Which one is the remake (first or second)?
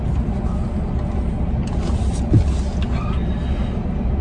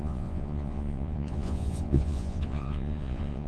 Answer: second